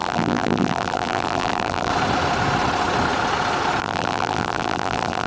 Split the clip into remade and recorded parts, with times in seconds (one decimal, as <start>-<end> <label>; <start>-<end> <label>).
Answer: 0.0-1.9 remade; 1.9-3.8 recorded; 3.8-5.3 remade